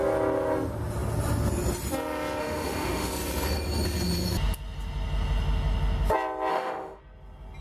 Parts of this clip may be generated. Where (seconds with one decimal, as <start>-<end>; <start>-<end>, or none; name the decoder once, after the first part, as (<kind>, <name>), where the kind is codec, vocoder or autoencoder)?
2.4-3.1 (autoencoder, DAC-VAE); 6.5-7.0